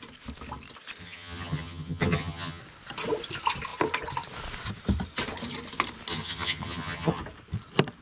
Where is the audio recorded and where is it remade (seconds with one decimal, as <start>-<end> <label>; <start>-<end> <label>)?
0.0-1.0 recorded; 1.0-2.6 remade; 2.6-6.1 recorded; 6.1-7.2 remade; 7.2-8.0 recorded